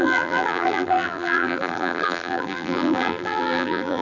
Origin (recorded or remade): remade